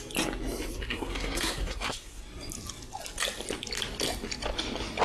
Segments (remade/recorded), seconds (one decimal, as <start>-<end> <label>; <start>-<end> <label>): 0.0-0.7 recorded; 0.7-2.2 remade; 2.2-5.0 recorded